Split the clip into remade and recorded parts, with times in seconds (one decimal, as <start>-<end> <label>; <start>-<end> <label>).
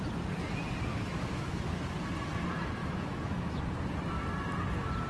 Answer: 0.0-0.9 recorded; 0.9-1.8 remade; 1.8-2.8 recorded; 2.8-3.6 remade; 3.6-5.1 recorded